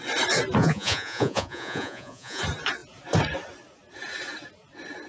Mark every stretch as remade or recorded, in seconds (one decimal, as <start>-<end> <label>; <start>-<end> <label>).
0.0-0.6 recorded; 0.6-2.4 remade; 2.4-5.1 recorded